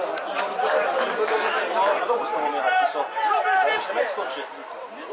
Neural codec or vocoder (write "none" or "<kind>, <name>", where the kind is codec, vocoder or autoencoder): none